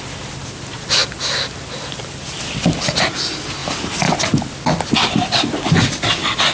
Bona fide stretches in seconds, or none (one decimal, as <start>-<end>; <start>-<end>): 0.0-6.5